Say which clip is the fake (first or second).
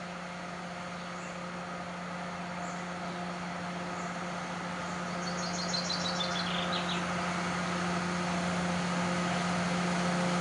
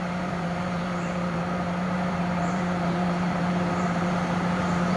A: second